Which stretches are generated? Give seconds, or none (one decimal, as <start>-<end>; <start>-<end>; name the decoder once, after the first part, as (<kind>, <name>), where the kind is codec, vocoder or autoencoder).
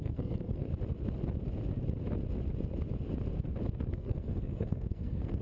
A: 0.0-0.7 (codec, SNAC); 3.9-5.4